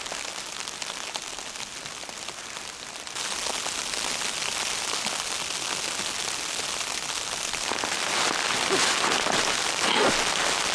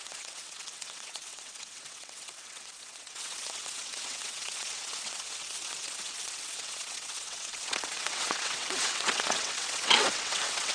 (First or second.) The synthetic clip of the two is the second